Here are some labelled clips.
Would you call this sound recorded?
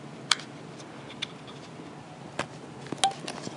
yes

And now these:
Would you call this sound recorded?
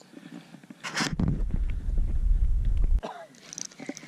yes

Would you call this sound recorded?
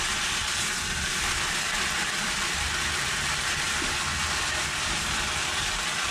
no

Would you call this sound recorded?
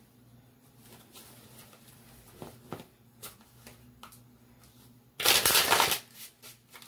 no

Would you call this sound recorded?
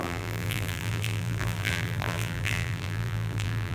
no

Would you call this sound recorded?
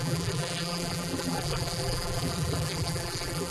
no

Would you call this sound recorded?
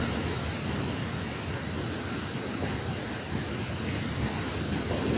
yes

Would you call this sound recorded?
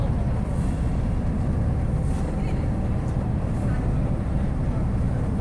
no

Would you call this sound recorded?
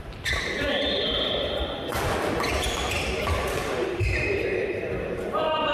no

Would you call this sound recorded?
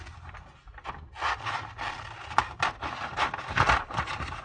yes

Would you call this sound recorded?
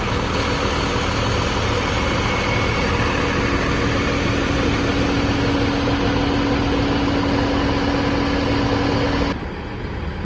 yes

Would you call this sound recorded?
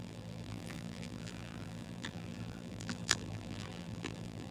no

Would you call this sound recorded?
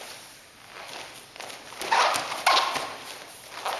no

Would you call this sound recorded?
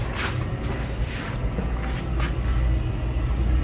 yes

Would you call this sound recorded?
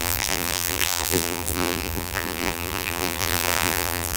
no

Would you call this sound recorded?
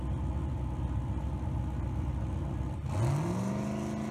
yes